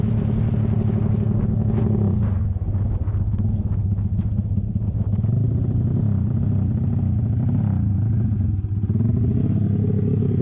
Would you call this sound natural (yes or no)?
yes